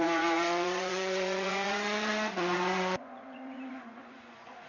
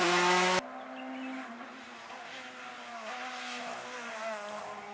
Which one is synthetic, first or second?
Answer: first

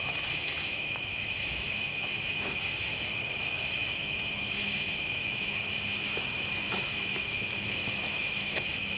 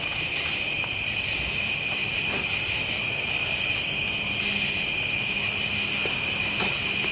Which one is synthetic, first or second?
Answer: first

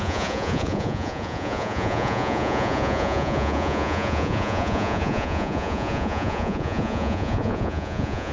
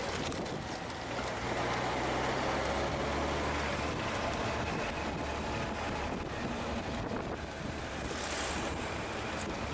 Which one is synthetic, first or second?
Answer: first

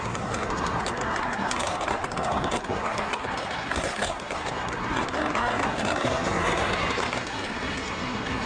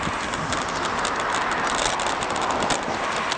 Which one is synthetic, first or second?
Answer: first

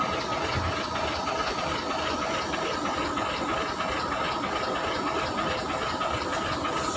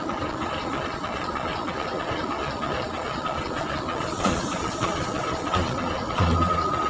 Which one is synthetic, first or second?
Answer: second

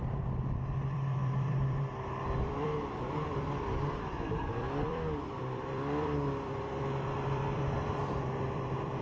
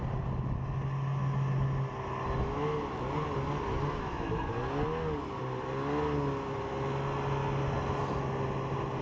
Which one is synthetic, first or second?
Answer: first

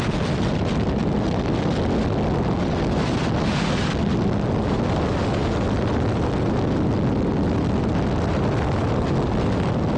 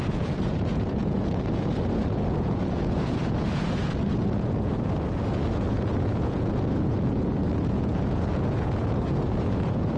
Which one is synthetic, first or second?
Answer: second